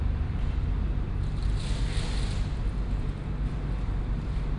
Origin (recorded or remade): recorded